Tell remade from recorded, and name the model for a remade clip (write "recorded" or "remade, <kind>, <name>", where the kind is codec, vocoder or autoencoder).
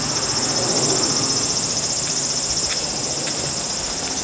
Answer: recorded